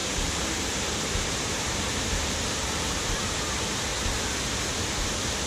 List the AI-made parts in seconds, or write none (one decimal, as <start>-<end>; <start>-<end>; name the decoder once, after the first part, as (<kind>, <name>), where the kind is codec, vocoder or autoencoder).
0.0-3.3 (vocoder, BigVGAN v2)